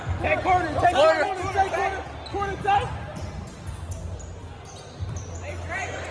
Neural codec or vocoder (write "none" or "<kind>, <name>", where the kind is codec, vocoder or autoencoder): none